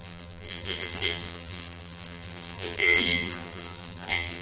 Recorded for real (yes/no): no